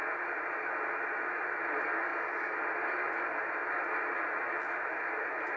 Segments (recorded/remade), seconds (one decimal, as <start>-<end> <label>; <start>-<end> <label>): 0.0-5.6 recorded